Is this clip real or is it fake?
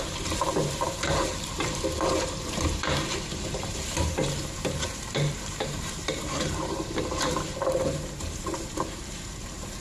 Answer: fake